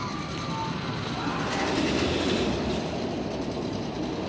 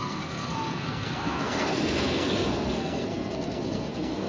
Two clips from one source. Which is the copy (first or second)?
second